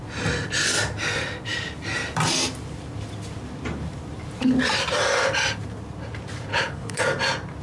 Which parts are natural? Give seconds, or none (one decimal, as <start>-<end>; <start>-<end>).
0.0-6.5; 7.0-7.6